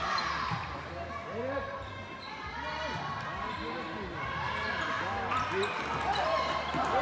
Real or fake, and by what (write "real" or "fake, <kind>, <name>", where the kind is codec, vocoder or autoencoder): real